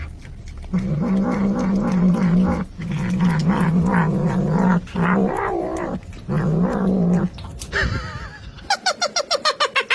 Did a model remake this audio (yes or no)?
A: no